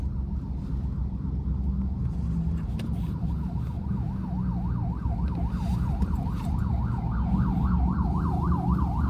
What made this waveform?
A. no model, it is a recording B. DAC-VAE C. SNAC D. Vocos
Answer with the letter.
A